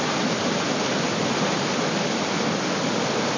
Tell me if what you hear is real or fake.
real